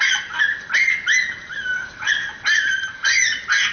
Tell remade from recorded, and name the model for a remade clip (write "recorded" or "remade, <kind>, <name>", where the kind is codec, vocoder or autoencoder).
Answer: recorded